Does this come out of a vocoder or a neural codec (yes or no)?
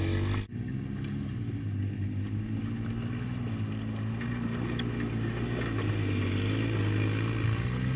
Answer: no